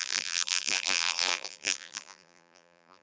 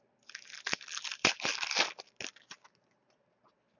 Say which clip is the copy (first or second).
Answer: first